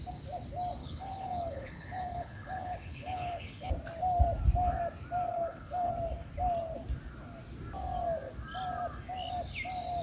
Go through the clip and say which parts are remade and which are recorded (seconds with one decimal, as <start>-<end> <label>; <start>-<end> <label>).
0.0-0.8 recorded; 0.8-3.7 remade; 3.7-5.3 recorded; 5.3-5.9 remade; 5.9-10.0 recorded